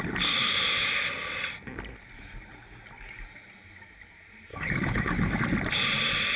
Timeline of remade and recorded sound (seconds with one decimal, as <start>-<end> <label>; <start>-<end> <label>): 0.0-4.5 recorded; 4.5-5.4 remade; 5.4-6.4 recorded